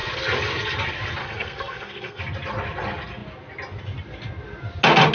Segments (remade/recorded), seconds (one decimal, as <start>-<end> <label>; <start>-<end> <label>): 0.0-1.2 recorded; 1.2-2.2 remade; 2.2-5.1 recorded